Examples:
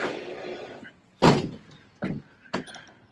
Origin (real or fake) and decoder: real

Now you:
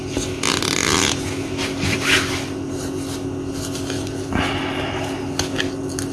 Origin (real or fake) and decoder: real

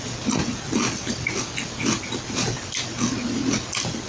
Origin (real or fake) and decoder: real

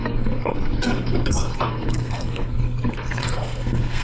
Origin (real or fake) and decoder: fake, codec, SNAC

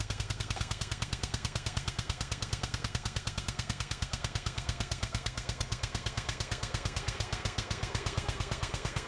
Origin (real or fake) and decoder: fake, codec, SNAC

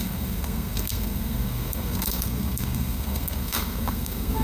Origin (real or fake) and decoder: fake, codec, SNAC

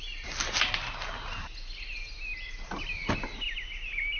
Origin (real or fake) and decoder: real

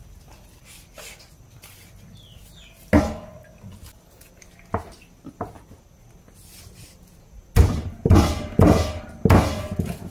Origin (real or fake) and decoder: real